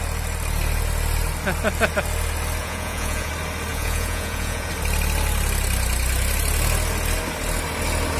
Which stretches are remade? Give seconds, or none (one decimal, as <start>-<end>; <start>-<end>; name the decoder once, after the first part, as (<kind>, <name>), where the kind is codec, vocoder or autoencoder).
2.6-3.3 (vocoder, Vocos); 3.7-4.7